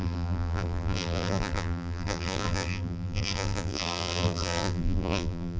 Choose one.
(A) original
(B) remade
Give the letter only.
B